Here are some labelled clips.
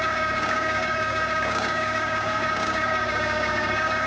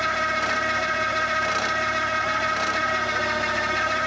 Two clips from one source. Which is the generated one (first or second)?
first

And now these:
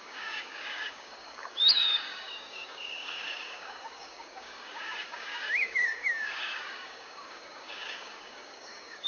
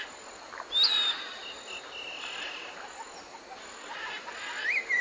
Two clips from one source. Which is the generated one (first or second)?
first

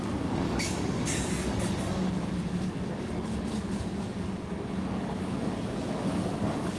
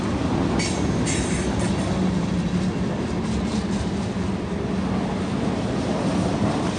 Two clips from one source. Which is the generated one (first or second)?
first